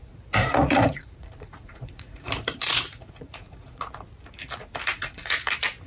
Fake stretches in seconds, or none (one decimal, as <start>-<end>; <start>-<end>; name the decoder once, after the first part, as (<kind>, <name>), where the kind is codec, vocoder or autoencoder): 0.4-3.9 (vocoder, Vocos); 4.9-5.5